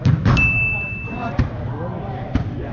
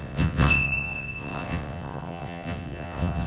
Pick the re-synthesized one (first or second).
second